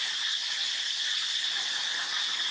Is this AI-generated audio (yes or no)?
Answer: no